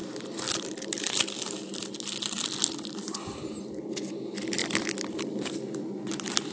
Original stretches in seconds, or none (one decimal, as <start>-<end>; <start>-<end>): 0.0-6.5